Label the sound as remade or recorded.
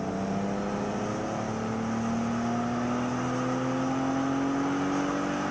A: recorded